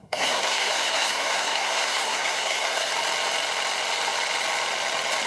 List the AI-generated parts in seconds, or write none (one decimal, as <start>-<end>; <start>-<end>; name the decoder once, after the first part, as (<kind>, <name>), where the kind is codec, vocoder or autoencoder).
0.0-2.9 (codec, SNAC)